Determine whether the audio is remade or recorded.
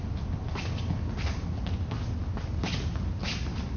recorded